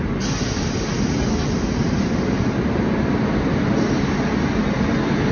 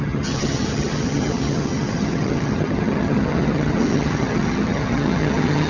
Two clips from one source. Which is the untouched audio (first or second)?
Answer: first